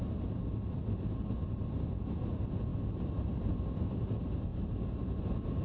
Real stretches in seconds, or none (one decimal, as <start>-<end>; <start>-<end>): 0.0-5.6